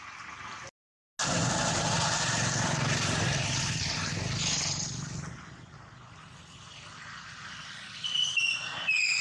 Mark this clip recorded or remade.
recorded